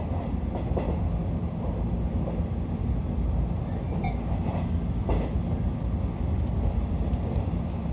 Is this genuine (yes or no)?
yes